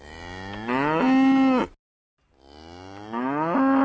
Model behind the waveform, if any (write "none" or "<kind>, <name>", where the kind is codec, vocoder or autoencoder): none